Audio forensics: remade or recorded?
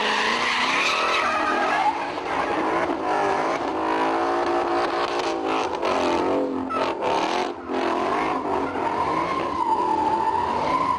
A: recorded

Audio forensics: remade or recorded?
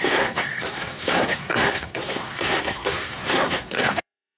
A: remade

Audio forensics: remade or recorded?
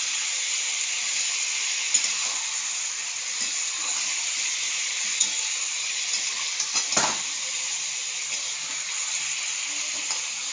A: recorded